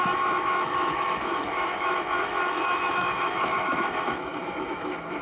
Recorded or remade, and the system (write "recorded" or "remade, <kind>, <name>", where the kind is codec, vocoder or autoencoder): remade, autoencoder, DAC-VAE